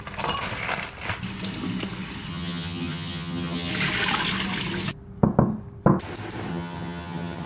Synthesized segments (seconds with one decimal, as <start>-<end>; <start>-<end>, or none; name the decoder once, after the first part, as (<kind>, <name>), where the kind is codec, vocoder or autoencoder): 2.3-3.7 (vocoder, HiFi-GAN); 6.5-7.5